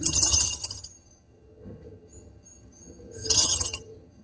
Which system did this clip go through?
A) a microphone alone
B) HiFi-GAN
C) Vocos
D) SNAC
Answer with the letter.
B